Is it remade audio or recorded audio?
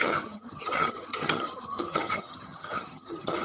remade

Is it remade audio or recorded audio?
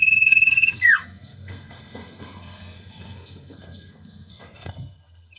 remade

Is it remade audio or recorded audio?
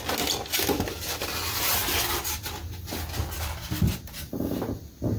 recorded